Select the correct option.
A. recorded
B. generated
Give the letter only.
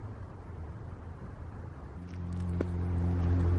A